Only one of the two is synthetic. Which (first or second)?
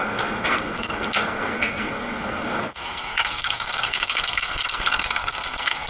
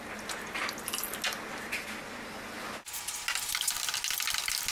first